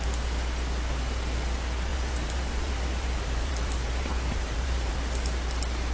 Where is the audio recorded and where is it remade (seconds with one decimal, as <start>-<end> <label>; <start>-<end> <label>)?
0.0-1.9 recorded; 1.9-4.9 remade; 4.9-5.9 recorded